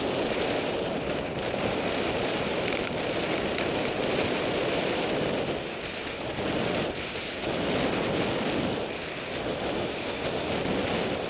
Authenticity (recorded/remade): recorded